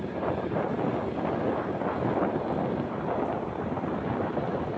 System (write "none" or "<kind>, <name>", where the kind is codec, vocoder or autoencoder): none